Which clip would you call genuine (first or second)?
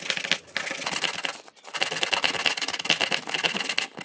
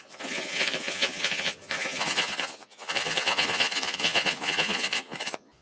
first